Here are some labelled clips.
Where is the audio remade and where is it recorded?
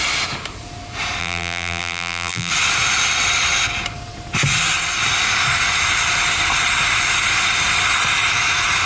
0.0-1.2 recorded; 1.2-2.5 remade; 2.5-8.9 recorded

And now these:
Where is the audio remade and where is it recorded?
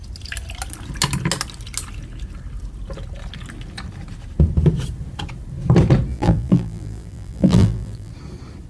0.0-6.1 recorded; 6.1-8.1 remade; 8.1-8.7 recorded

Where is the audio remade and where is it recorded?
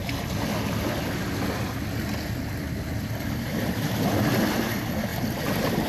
0.0-5.9 recorded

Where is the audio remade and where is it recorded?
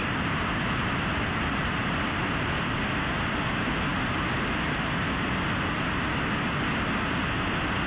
0.0-2.3 remade; 2.3-7.9 recorded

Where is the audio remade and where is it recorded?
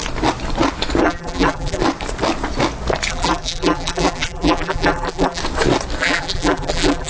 0.0-1.0 recorded; 1.0-1.8 remade; 1.8-3.1 recorded; 3.1-5.4 remade; 5.4-6.0 recorded; 6.0-7.1 remade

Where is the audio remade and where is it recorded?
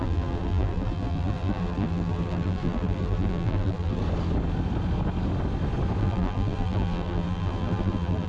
0.0-4.0 remade; 4.0-6.0 recorded; 6.0-8.3 remade